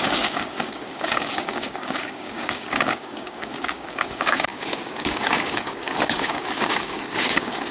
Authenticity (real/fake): fake